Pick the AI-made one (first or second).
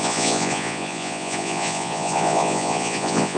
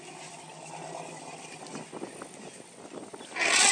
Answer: first